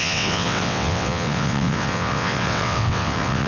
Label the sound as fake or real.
fake